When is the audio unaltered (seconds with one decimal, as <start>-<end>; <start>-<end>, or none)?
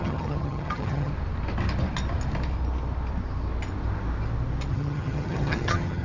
1.1-4.7